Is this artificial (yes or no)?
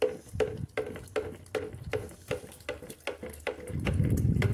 no